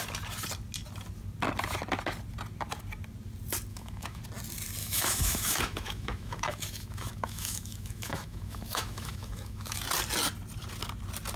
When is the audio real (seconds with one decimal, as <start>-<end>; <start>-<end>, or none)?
0.0-3.7; 4.2-4.8; 9.8-11.4